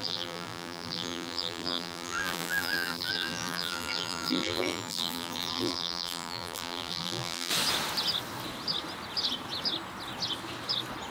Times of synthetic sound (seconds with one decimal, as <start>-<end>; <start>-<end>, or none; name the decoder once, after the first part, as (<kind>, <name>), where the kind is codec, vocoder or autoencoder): 0.0-7.5 (vocoder, BigVGAN v2)